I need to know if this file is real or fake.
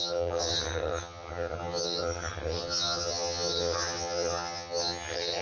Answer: fake